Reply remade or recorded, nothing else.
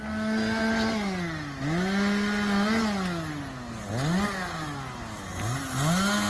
recorded